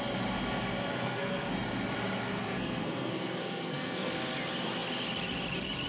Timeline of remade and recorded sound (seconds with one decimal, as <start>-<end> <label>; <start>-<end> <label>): 0.0-0.9 recorded; 0.9-1.5 remade; 1.5-2.4 recorded; 2.4-4.1 remade; 4.1-5.9 recorded